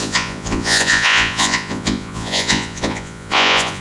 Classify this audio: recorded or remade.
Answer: remade